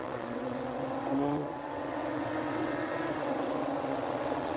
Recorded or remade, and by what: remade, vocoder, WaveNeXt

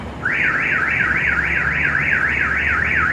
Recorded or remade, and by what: recorded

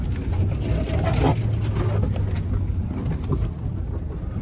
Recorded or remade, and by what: recorded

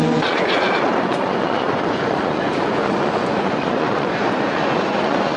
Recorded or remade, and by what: remade, vocoder, Vocos